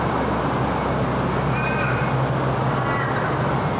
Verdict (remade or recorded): recorded